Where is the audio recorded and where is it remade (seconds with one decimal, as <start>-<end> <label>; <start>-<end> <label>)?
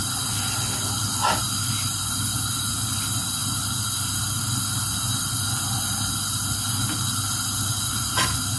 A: 0.0-8.6 recorded